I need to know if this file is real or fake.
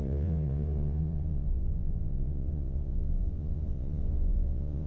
fake